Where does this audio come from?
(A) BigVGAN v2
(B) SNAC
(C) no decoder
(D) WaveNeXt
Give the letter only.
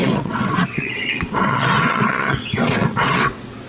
D